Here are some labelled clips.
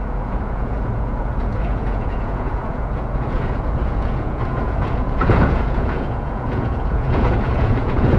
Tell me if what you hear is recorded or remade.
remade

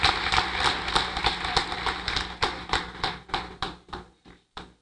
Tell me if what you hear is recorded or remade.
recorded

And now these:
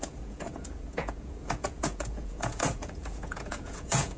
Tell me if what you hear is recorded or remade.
remade